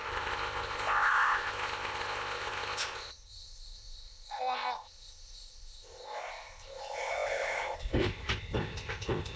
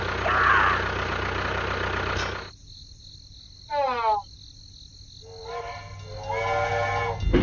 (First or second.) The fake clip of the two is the first